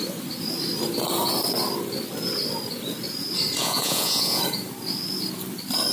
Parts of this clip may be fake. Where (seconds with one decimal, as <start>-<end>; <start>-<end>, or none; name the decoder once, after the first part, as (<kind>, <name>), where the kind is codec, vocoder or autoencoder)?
3.6-4.4 (vocoder, Vocos)